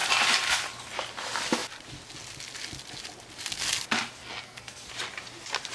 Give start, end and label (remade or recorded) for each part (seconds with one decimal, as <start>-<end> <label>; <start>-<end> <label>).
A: 0.0-4.2 recorded; 4.2-4.9 remade; 4.9-5.7 recorded